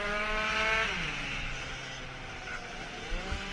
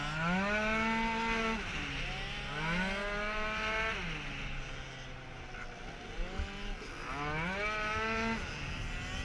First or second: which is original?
second